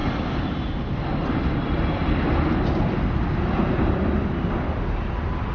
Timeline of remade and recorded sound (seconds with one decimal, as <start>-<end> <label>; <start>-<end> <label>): 0.0-5.5 recorded